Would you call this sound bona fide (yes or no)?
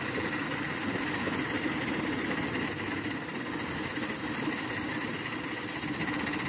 yes